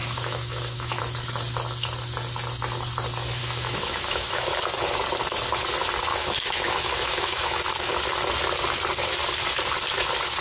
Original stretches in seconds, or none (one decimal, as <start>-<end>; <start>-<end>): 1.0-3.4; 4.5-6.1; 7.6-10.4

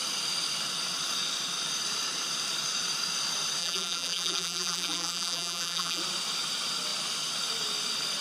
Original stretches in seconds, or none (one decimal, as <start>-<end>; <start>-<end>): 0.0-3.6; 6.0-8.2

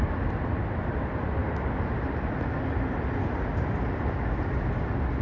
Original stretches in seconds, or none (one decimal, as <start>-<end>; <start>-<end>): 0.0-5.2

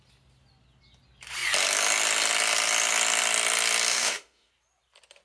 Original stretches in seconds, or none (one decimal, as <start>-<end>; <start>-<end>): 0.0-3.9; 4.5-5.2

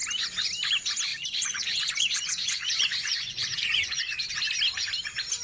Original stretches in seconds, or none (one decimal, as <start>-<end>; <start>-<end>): 0.0-1.1; 4.3-5.4

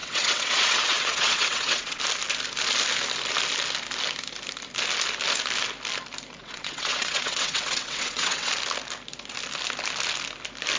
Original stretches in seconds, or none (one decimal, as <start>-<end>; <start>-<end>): 2.0-6.4; 8.5-10.8

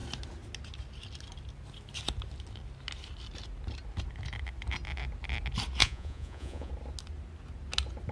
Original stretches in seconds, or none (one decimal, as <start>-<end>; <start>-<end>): 0.0-5.8; 6.7-8.1

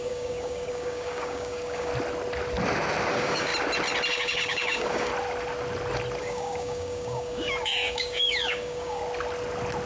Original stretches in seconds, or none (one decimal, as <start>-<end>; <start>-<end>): 1.9-3.1; 3.5-4.1; 5.1-6.2; 9.0-9.9